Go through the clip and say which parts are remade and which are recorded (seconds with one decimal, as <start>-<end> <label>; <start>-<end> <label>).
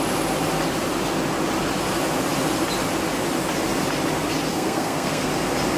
0.0-4.5 recorded; 4.5-5.3 remade; 5.3-5.8 recorded